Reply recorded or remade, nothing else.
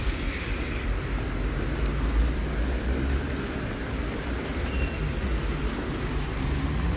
recorded